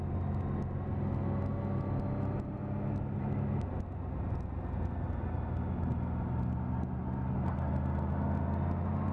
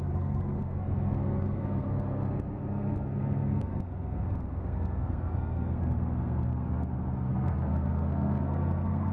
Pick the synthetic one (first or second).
second